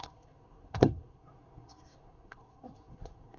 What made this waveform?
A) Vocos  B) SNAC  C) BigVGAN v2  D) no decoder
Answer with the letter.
B